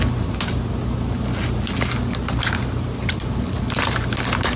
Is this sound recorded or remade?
recorded